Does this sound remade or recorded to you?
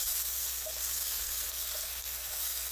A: remade